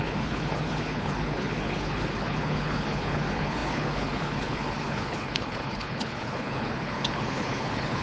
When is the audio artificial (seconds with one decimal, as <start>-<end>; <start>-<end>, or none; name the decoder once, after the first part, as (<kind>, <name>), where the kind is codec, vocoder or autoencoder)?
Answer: 0.0-8.0 (codec, HILCodec)